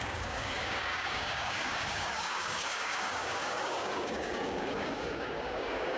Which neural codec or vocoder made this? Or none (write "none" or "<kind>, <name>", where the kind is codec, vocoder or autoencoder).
codec, DAC